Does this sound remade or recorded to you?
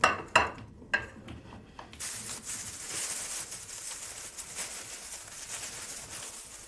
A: recorded